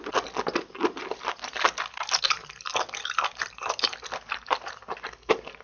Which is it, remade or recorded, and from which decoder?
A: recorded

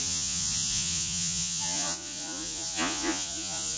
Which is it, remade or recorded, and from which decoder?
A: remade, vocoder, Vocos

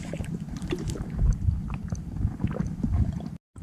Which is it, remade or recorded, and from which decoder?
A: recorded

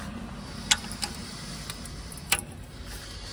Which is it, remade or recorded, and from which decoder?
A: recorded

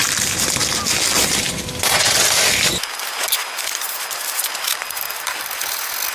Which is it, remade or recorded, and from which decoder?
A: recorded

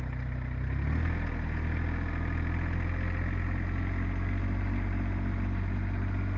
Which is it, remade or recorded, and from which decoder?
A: recorded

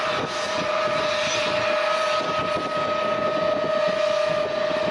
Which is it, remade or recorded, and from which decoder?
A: recorded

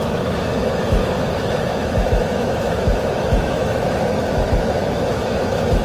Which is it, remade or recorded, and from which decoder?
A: remade, autoencoder, DAC-VAE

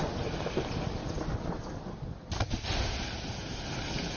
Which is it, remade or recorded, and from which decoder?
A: recorded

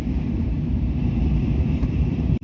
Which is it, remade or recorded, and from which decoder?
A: remade, vocoder, BigVGAN v2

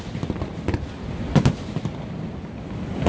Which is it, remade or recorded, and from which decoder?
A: recorded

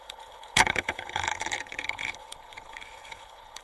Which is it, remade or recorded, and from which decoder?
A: remade, codec, HILCodec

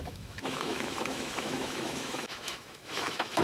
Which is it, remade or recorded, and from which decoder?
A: remade, autoencoder, DAC-VAE